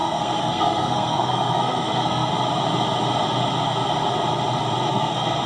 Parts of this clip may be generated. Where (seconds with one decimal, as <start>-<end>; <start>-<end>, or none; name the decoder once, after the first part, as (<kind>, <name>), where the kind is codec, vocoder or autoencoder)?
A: 0.0-2.3 (codec, SNAC); 4.9-5.5